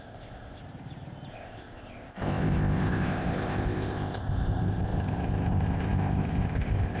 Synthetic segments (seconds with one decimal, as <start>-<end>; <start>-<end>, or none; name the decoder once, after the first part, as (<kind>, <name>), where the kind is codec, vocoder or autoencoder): 0.0-0.6 (codec, ZipCodec); 1.3-7.0